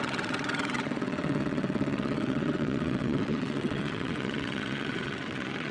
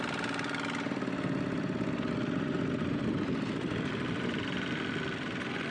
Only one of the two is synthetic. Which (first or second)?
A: first